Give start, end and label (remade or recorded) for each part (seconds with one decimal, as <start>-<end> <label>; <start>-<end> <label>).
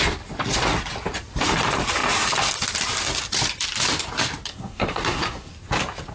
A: 0.0-4.5 recorded; 4.5-5.5 remade; 5.5-6.1 recorded